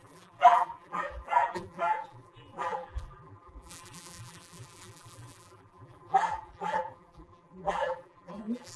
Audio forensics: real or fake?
fake